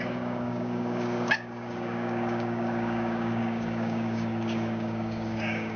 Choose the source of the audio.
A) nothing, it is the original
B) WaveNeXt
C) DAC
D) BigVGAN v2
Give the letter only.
C